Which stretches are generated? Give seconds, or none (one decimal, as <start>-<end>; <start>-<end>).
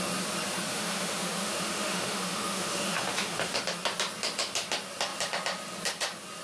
0.7-3.6